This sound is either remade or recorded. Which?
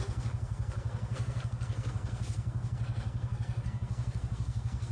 remade